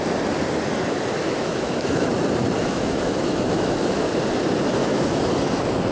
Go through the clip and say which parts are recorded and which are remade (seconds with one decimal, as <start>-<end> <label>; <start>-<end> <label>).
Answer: 0.0-1.2 recorded; 1.2-2.1 remade; 2.1-2.6 recorded; 2.6-4.1 remade; 4.1-4.8 recorded; 4.8-5.3 remade; 5.3-5.9 recorded